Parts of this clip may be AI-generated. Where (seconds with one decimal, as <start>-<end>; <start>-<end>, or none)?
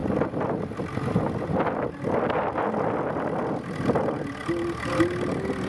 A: none